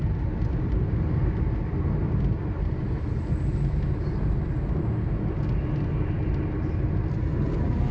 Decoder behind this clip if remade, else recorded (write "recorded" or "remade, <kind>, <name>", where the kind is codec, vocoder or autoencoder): recorded